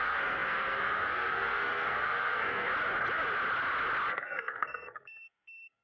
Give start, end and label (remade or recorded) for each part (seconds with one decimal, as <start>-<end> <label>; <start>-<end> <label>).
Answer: 0.0-2.7 remade; 2.7-4.1 recorded; 4.1-5.8 remade